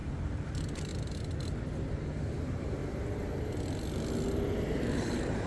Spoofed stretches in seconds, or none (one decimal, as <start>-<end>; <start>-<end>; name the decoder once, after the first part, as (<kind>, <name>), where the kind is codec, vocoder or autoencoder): 0.5-0.9 (vocoder, BigVGAN v2); 2.2-2.8; 4.7-5.5